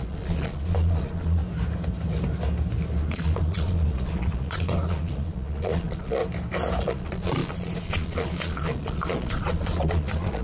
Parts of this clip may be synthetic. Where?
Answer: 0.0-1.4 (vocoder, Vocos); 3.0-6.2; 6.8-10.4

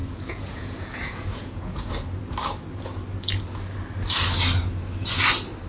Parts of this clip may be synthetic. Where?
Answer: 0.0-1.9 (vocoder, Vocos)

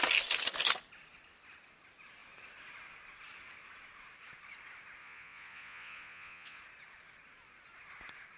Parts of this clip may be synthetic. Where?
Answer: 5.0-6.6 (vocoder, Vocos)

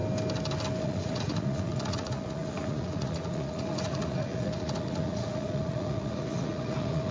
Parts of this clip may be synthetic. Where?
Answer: 0.8-7.1 (vocoder, Vocos)

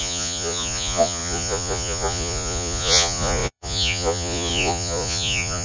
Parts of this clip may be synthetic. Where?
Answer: 0.0-5.6 (vocoder, Vocos)